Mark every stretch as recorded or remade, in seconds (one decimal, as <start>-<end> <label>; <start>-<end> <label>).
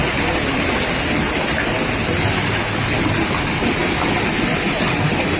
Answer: 0.0-5.4 recorded